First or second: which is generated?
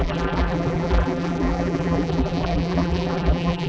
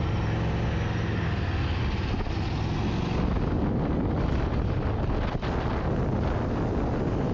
first